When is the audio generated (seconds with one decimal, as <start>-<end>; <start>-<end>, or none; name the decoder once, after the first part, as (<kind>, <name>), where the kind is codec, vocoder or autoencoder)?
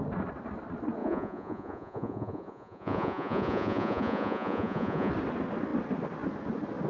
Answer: 1.0-5.1 (vocoder, Vocos)